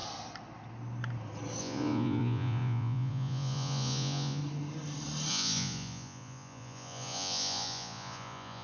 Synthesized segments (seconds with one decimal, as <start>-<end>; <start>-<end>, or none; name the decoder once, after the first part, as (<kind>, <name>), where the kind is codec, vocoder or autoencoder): 1.6-4.4 (vocoder, Vocos); 5.3-8.6